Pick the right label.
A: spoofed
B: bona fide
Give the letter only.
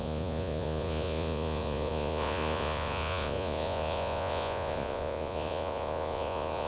A